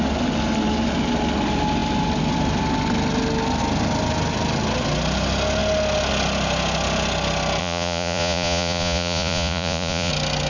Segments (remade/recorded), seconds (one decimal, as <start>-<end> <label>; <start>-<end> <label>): 0.0-7.6 recorded; 7.6-10.1 remade; 10.1-10.5 recorded